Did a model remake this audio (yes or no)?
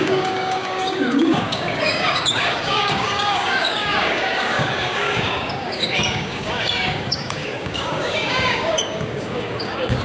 yes